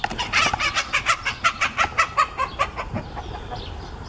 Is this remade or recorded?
recorded